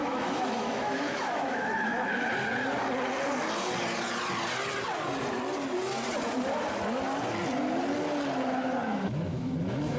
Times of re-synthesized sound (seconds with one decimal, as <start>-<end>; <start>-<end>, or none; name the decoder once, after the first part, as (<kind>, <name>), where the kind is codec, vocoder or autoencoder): 0.0-2.2 (autoencoder, DAC-VAE); 8.9-10.0